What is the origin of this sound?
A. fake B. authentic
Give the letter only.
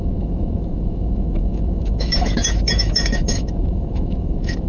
A